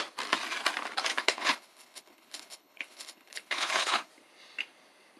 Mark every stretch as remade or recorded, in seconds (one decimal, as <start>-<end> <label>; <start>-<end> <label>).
0.0-1.1 recorded; 1.1-4.1 remade; 4.1-5.2 recorded